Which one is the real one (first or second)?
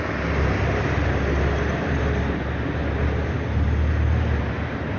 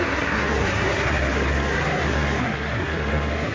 first